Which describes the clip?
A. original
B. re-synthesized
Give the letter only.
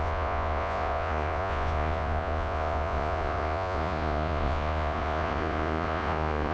B